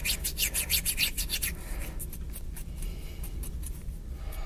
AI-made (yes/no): no